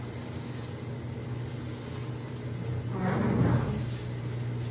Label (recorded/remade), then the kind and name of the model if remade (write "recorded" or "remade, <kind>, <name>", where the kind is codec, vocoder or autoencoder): recorded